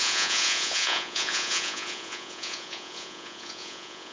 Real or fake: fake